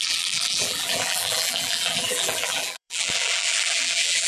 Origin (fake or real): fake